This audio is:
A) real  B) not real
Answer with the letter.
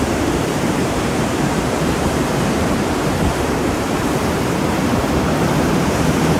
B